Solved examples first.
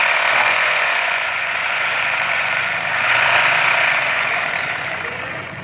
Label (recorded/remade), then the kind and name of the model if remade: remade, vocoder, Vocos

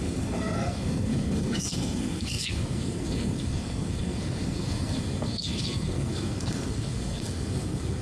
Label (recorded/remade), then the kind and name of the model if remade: remade, codec, SNAC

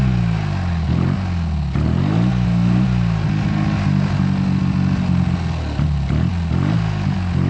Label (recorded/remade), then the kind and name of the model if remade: recorded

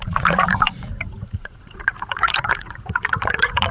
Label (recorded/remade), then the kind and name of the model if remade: remade, vocoder, Vocos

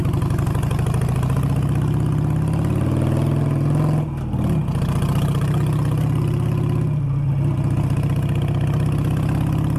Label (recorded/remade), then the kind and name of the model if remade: recorded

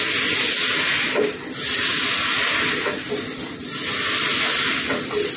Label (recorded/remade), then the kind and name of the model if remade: recorded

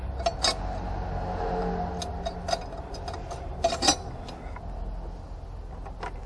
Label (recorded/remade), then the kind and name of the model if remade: recorded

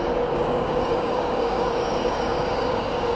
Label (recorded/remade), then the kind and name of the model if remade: remade, codec, DAC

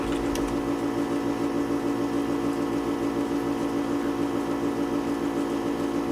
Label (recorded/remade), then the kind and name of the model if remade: recorded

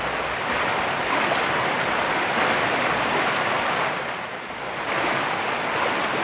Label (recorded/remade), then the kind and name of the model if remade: recorded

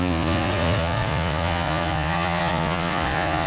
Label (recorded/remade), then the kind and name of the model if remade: remade, vocoder, Vocos